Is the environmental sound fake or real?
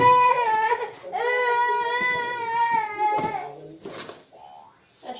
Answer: real